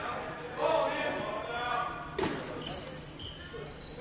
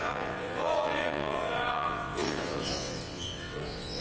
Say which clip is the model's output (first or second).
second